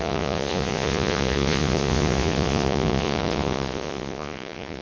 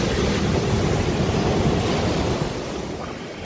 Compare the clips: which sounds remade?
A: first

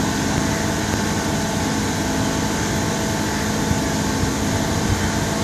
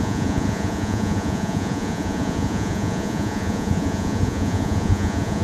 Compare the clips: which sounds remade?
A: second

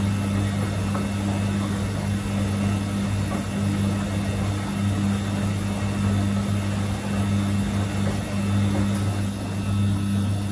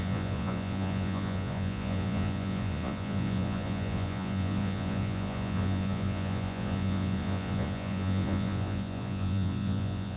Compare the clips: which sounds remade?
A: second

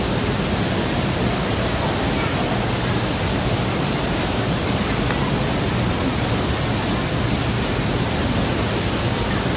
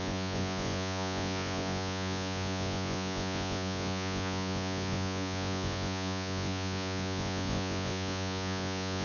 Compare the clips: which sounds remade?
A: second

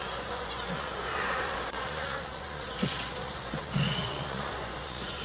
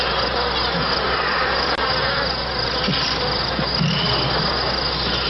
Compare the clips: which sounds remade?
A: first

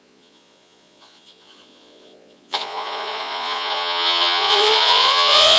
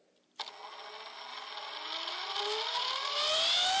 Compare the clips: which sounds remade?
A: first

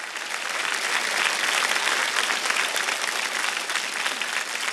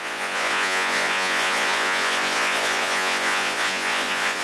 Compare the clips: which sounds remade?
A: second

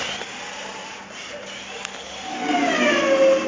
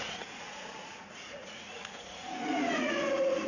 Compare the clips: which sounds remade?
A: second